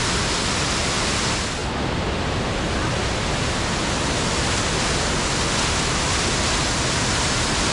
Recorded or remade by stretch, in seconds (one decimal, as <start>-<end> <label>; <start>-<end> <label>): 0.0-7.7 recorded